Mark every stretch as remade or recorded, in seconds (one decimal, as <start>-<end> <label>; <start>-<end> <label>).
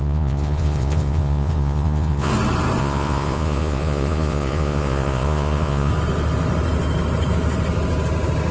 0.0-2.3 remade; 2.3-2.8 recorded; 2.8-5.9 remade; 5.9-8.5 recorded